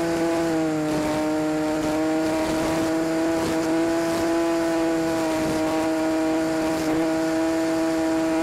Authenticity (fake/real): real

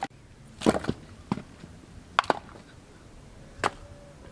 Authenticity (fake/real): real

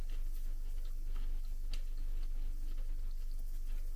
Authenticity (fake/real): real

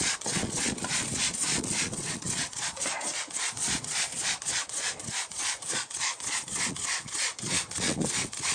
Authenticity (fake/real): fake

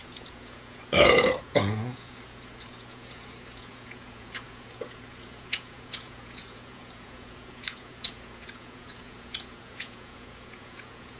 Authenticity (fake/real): fake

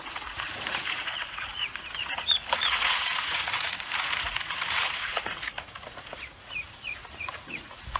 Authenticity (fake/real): fake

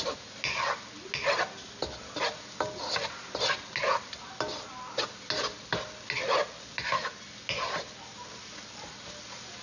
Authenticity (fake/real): real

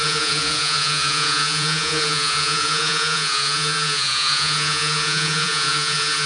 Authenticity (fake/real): fake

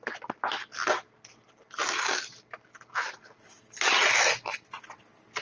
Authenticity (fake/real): real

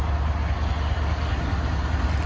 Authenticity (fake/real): real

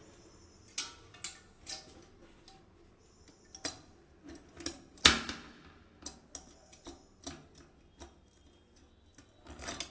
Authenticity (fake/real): real